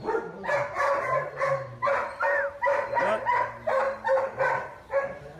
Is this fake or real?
fake